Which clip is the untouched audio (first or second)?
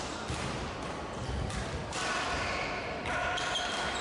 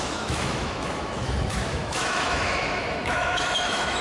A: first